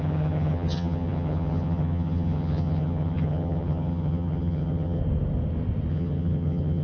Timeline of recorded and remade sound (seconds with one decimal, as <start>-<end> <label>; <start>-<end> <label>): 0.0-5.0 remade; 5.0-5.9 recorded; 5.9-6.8 remade